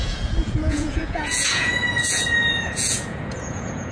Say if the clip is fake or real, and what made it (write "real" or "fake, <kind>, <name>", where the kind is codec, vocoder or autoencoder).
fake, vocoder, Vocos